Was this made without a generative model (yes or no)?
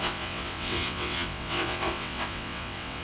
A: no